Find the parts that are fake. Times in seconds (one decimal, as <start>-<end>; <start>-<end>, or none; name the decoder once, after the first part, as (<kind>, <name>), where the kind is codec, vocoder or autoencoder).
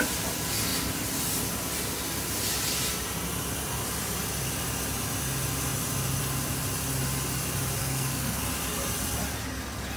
7.8-8.4 (codec, SNAC)